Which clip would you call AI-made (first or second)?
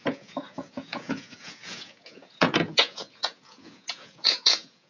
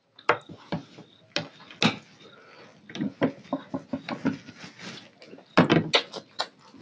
first